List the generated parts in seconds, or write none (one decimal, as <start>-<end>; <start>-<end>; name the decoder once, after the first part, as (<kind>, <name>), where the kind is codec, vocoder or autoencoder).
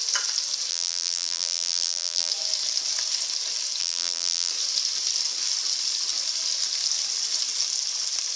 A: 0.7-2.3 (vocoder, BigVGAN v2); 3.8-4.5